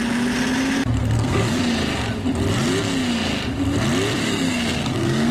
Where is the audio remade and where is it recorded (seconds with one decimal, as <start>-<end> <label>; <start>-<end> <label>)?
0.0-1.0 recorded; 1.0-1.6 remade; 1.6-4.2 recorded; 4.2-5.3 remade